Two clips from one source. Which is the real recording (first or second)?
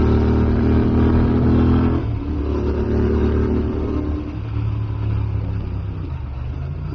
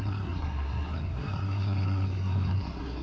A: first